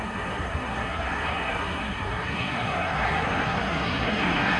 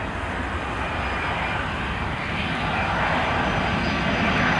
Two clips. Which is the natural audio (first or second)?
second